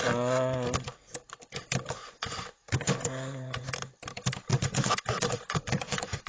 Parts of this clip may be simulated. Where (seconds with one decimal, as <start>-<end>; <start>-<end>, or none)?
2.0-3.7; 4.5-6.3